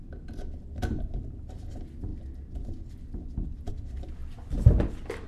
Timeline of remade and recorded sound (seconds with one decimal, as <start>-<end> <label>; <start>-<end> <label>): 0.0-5.3 recorded